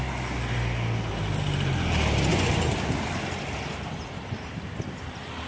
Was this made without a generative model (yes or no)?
yes